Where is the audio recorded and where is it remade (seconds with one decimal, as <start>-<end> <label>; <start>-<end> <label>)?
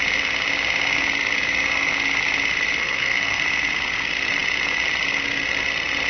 0.0-2.8 recorded; 2.8-3.4 remade; 3.4-6.1 recorded